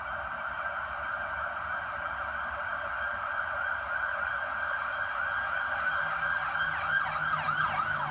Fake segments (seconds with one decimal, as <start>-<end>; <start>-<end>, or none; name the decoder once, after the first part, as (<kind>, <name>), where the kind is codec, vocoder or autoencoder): none

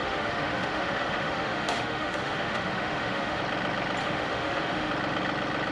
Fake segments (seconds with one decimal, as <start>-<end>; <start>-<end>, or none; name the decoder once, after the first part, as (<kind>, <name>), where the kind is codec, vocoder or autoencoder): 0.0-3.4 (autoencoder, DAC-VAE); 4.0-4.9

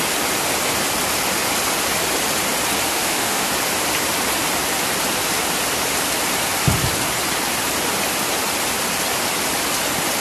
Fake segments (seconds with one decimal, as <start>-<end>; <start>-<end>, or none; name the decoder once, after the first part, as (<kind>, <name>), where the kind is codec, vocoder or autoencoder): 2.9-3.5 (autoencoder, DAC-VAE)

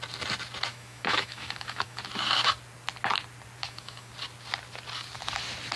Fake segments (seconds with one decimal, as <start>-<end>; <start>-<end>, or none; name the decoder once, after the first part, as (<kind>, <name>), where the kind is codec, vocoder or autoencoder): 0.7-2.0 (autoencoder, DAC-VAE); 3.6-4.1

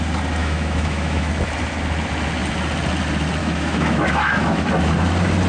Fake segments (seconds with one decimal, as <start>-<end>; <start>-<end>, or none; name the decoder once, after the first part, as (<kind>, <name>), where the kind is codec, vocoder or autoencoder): 0.4-1.3 (autoencoder, DAC-VAE); 3.4-4.7

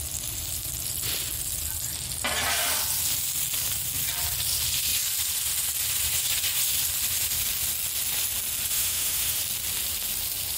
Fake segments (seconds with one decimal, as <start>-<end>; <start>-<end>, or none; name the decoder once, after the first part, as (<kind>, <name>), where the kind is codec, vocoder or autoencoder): 8.7-9.4 (autoencoder, DAC-VAE)

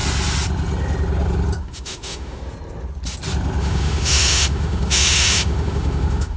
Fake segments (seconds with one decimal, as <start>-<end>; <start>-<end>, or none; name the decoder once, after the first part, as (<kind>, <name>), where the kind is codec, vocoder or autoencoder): 1.6-2.4 (autoencoder, DAC-VAE); 3.6-6.4

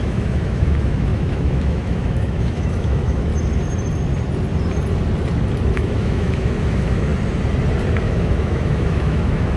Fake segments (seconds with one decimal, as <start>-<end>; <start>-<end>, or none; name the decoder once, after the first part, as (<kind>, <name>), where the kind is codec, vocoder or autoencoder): 0.0-3.3 (autoencoder, DAC-VAE); 5.7-7.1; 8.0-9.6